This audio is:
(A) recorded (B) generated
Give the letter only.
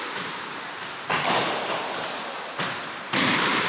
A